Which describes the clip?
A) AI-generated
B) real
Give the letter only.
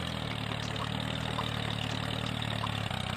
B